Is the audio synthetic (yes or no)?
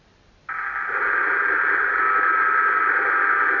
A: no